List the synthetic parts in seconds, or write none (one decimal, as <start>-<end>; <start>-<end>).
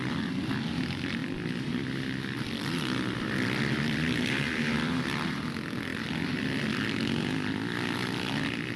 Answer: 1.2-5.5; 5.9-8.8